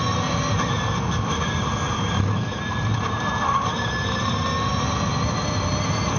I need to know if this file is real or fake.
real